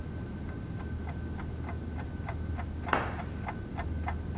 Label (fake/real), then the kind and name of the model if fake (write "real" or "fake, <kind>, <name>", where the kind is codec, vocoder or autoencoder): real